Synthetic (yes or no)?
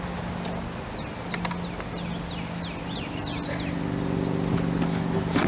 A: no